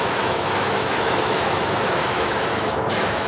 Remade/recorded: remade